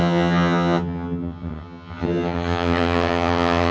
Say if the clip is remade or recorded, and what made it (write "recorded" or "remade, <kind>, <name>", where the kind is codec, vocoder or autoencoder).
remade, vocoder, HiFi-GAN